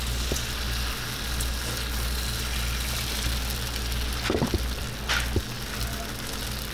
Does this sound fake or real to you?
real